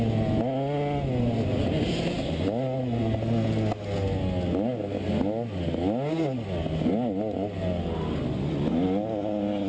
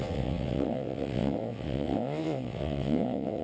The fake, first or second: second